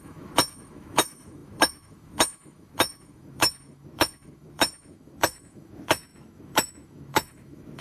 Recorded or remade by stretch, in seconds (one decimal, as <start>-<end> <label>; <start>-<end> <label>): 0.0-7.8 remade

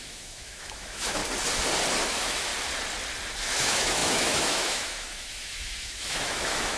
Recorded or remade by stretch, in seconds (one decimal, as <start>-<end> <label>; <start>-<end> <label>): 0.0-1.2 remade; 1.2-2.0 recorded; 2.0-2.5 remade; 2.5-3.4 recorded; 3.4-6.8 remade